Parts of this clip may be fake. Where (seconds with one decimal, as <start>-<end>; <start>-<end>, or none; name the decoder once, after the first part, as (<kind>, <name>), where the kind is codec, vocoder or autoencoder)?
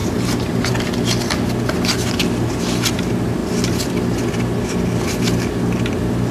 0.0-0.7 (vocoder, BigVGAN v2)